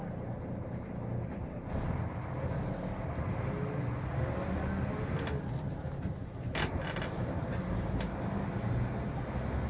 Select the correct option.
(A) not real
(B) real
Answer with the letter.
B